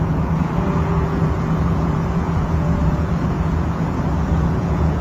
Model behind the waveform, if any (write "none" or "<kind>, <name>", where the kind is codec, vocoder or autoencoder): vocoder, Vocos